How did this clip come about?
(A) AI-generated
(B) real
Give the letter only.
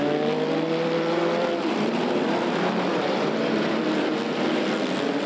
A